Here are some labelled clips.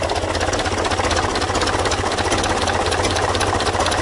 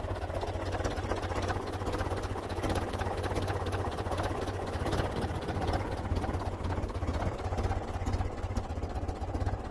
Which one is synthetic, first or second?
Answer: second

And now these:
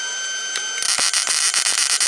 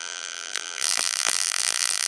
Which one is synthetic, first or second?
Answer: second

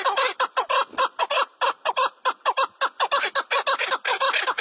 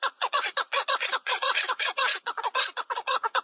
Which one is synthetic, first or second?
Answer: second